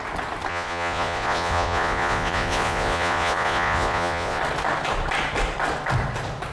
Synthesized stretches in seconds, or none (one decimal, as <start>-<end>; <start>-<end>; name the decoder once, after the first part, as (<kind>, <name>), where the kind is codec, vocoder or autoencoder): 0.5-4.4 (vocoder, Vocos)

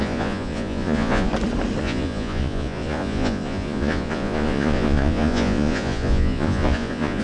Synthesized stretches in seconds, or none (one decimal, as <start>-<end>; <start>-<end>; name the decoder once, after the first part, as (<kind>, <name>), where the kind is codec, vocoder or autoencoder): 0.0-1.3 (vocoder, Vocos); 1.8-7.2

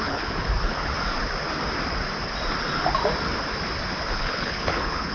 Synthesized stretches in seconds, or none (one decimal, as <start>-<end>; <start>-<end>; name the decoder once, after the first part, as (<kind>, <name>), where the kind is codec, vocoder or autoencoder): 0.0-0.9 (codec, HILCodec); 4.0-5.1

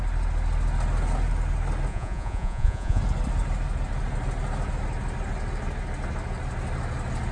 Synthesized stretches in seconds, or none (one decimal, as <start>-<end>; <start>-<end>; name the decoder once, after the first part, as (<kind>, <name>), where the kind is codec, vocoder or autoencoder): 1.9-3.0 (vocoder, Vocos)

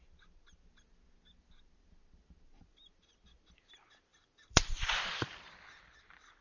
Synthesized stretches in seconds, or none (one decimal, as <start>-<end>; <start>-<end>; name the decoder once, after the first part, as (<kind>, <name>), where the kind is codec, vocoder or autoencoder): 4.1-6.4 (vocoder, BigVGAN v2)

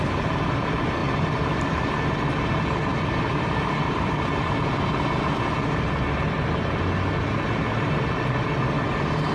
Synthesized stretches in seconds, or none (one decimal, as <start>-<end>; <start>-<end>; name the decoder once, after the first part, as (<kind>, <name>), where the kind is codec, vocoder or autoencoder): 1.0-2.1 (vocoder, BigVGAN v2); 2.9-3.8

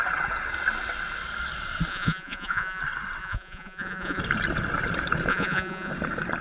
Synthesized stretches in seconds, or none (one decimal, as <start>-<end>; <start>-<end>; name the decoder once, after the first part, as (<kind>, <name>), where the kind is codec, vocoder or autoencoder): 1.9-2.8 (vocoder, Vocos); 3.2-4.2; 5.3-5.9

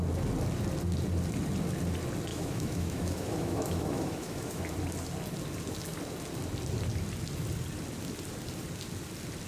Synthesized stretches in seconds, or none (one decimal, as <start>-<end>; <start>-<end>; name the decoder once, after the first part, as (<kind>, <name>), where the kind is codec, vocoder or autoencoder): 2.3-4.6 (autoencoder, DAC-VAE)